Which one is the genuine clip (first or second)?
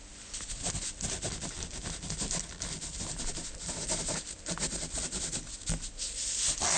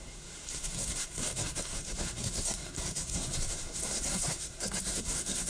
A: first